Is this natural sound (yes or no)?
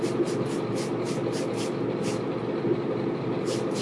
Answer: yes